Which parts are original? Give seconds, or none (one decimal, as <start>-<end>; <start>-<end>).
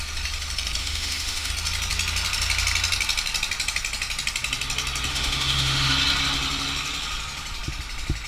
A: 0.0-0.8; 1.5-5.1; 5.9-8.3